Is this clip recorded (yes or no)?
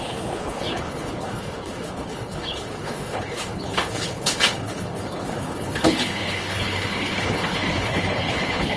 no